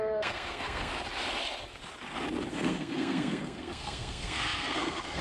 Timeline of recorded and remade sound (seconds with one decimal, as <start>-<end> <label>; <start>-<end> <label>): 0.0-0.9 remade; 0.9-2.5 recorded; 2.5-5.2 remade